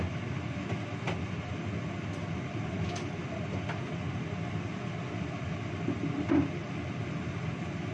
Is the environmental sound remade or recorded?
recorded